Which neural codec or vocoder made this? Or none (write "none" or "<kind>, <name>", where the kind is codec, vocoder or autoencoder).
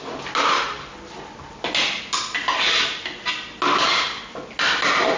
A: none